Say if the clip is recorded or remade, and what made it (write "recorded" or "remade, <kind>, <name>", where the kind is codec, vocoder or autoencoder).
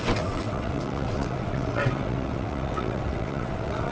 remade, vocoder, WaveNeXt